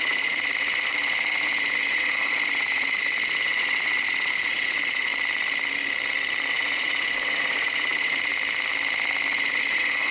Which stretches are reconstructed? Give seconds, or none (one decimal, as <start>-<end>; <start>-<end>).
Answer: 0.0-5.1; 6.5-8.3; 9.3-10.1